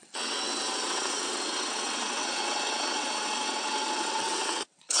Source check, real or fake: fake